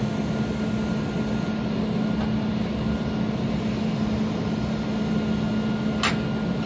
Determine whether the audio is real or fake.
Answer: real